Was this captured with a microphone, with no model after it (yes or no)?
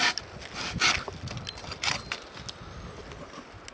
yes